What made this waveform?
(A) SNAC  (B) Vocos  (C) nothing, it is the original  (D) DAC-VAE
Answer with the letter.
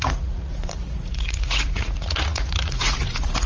B